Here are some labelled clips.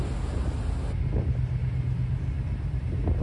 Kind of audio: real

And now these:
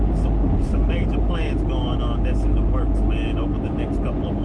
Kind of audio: real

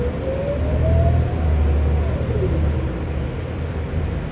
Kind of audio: real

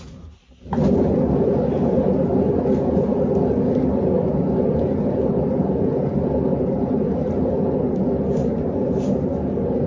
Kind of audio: real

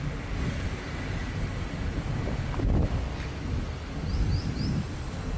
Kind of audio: real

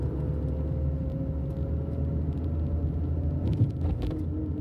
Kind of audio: real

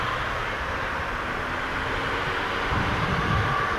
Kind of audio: real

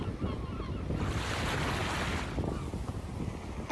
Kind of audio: real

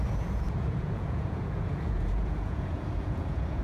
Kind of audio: fake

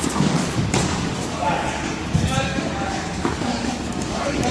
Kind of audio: fake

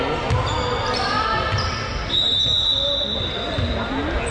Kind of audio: real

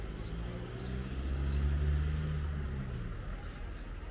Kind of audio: real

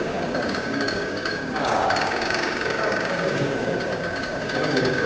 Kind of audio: fake